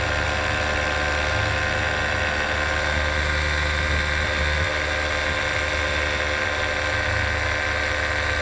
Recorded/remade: recorded